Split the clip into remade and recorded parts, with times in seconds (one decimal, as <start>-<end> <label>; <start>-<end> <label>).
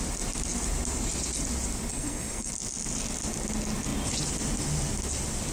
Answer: 0.0-1.9 recorded; 1.9-2.5 remade; 2.5-5.5 recorded